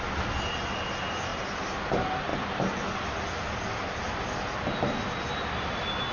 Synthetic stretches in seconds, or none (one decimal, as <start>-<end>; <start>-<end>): none